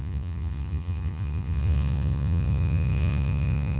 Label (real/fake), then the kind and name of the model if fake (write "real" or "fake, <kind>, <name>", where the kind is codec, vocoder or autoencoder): fake, vocoder, Vocos